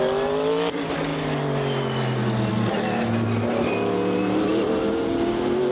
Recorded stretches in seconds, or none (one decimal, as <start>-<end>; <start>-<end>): 0.0-5.7